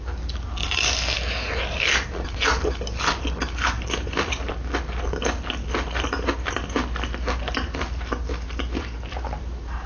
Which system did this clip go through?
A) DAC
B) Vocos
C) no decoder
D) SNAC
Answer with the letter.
C